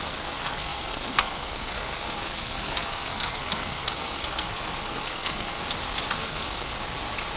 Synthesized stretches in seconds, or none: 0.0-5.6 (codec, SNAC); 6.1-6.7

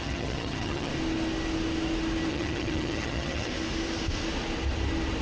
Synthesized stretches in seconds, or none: 0.0-0.9 (vocoder, HiFi-GAN); 2.3-3.5

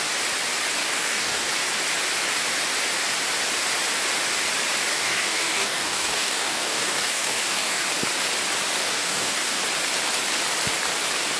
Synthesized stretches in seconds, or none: 0.8-1.5 (codec, DAC); 4.9-7.9; 8.8-9.6

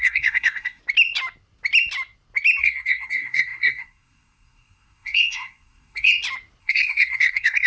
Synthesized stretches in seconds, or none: 0.0-0.8 (codec, SNAC); 2.6-6.1; 6.6-7.7

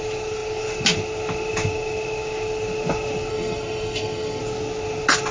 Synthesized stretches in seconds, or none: 3.3-4.4 (codec, SNAC)